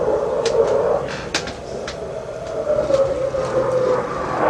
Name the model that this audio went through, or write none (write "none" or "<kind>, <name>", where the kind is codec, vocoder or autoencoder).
none